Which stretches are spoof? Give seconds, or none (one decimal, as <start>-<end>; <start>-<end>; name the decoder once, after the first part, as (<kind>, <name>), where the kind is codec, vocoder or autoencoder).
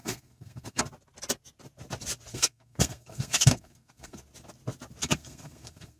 0.0-0.8 (codec, SNAC); 2.3-4.2; 5.0-6.0